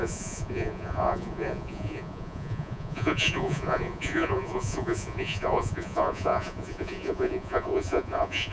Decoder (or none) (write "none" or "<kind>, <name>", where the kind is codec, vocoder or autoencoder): vocoder, Vocos